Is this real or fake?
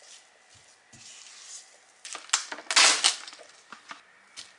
real